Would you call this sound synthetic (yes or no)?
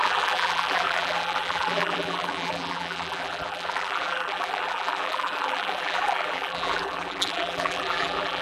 yes